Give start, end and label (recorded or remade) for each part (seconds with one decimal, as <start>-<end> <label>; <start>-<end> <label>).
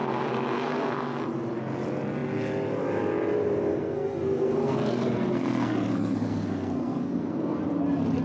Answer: 0.0-1.2 remade; 1.2-3.7 recorded; 3.7-7.6 remade; 7.6-8.2 recorded